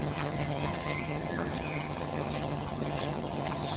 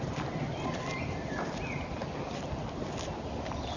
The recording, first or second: second